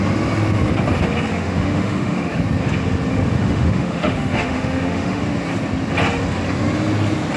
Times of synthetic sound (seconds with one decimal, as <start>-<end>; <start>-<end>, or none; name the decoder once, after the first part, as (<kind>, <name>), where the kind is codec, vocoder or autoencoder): 1.3-2.4 (autoencoder, DAC-VAE); 3.1-5.2